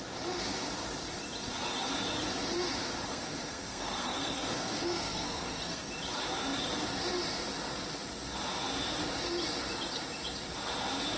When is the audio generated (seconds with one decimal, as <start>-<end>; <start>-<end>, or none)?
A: 3.1-5.9